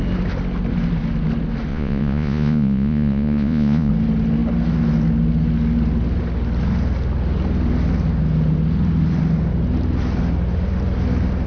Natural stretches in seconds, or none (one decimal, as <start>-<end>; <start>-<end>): 0.0-1.7; 3.9-11.5